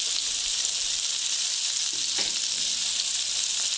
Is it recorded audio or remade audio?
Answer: recorded